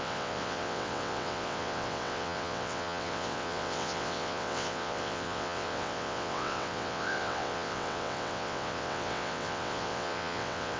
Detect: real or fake fake